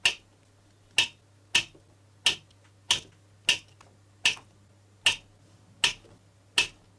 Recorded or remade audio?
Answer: recorded